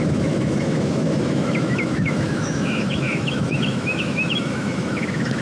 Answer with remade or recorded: remade